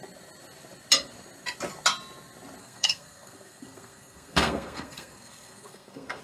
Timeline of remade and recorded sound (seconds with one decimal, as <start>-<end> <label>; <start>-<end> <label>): 0.0-2.6 recorded; 2.6-6.2 remade